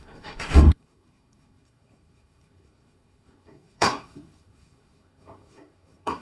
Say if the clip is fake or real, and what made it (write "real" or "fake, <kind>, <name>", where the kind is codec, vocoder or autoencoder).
fake, codec, SNAC